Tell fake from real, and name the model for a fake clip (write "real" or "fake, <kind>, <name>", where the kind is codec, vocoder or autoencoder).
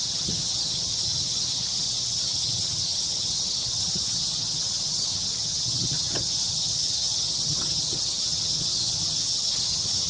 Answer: fake, vocoder, HiFi-GAN